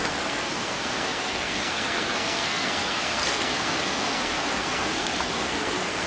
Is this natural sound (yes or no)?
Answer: no